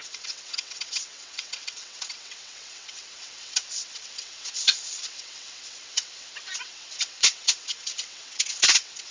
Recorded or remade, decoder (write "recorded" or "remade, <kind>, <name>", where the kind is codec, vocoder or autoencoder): remade, vocoder, WaveNeXt